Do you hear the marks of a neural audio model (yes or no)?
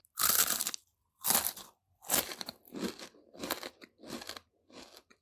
no